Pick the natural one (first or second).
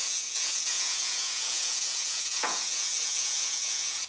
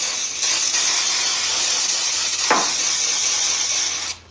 second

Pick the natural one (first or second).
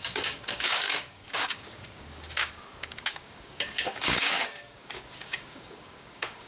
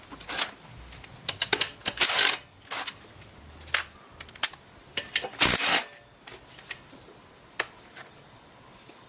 second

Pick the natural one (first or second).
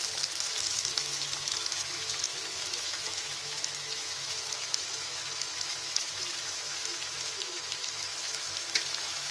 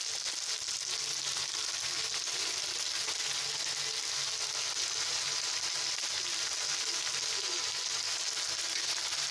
second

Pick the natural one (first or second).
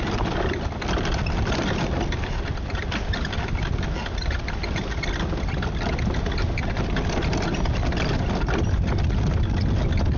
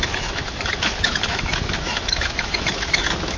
first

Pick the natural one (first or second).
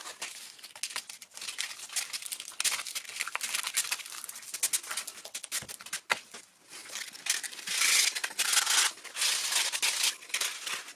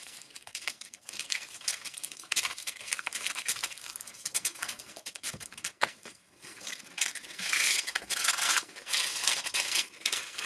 first